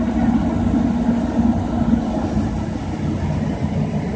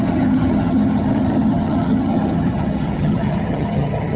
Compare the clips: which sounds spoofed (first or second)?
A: second